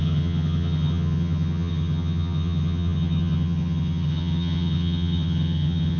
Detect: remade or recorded remade